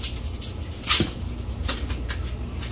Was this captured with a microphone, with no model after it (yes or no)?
yes